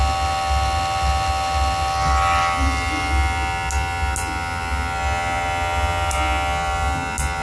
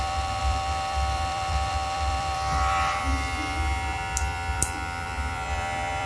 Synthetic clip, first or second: second